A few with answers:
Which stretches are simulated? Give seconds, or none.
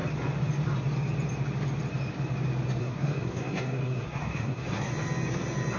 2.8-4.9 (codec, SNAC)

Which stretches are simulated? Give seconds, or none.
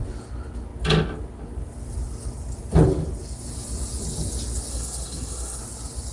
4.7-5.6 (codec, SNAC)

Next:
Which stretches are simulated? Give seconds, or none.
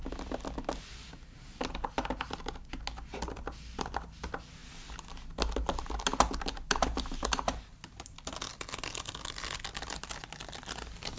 none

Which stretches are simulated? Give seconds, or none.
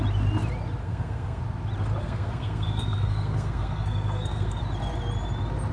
0.8-1.4 (codec, SNAC); 2.0-4.6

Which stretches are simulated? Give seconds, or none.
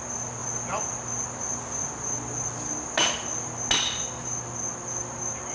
none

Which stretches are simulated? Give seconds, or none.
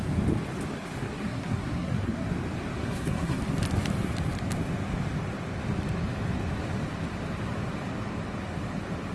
1.0-2.3 (codec, SNAC); 2.8-3.4